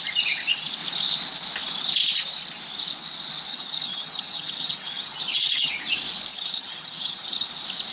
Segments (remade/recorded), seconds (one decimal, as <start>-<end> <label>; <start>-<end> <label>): 0.0-3.5 recorded; 3.5-5.7 remade; 5.7-6.3 recorded; 6.3-7.5 remade; 7.5-7.9 recorded